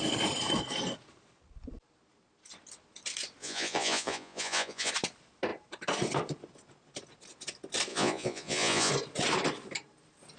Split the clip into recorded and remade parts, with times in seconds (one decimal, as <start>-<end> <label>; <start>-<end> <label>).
0.0-3.4 recorded; 3.4-4.9 remade; 4.9-7.9 recorded; 7.9-8.9 remade; 8.9-10.4 recorded